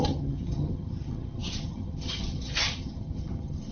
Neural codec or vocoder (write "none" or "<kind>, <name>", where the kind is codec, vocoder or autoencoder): vocoder, HiFi-GAN